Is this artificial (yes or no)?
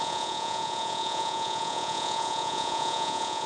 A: yes